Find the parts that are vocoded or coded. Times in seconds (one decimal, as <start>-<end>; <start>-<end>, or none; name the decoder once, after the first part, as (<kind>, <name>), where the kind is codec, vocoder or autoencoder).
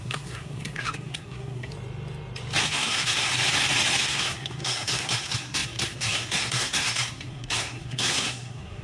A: 0.0-1.7 (codec, SNAC); 2.6-3.3; 4.0-8.8